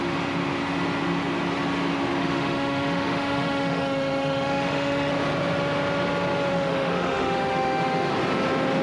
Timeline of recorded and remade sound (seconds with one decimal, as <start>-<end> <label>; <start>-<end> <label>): 0.0-2.2 recorded; 2.2-5.1 remade; 5.1-6.5 recorded; 6.5-8.1 remade; 8.1-8.8 recorded